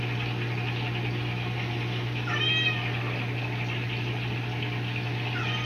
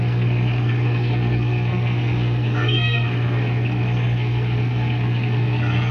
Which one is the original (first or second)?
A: first